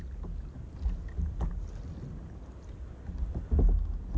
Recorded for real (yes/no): yes